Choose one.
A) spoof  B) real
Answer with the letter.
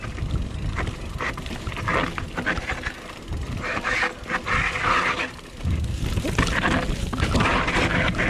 B